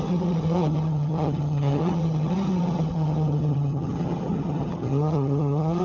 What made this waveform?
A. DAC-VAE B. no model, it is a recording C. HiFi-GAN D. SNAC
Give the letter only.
C